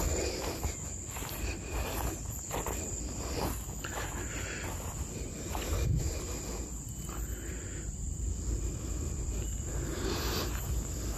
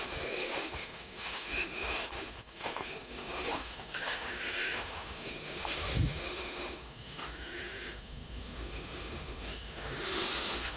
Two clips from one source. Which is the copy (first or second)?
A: second